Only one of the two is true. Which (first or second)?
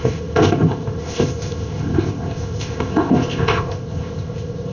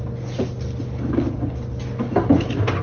second